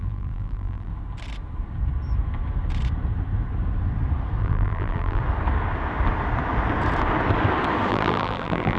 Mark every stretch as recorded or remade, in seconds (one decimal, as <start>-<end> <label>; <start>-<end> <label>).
0.0-0.9 remade; 0.9-4.4 recorded; 4.4-5.2 remade; 5.2-7.9 recorded; 7.9-8.8 remade